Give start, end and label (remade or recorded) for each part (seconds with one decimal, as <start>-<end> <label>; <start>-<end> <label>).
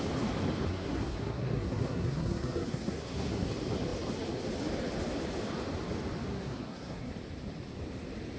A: 0.0-0.7 recorded; 0.7-3.5 remade; 3.5-6.3 recorded; 6.3-7.1 remade; 7.1-8.4 recorded